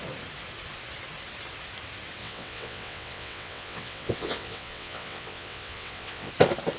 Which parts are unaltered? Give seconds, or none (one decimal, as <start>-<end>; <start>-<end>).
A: 0.0-2.2; 6.3-6.8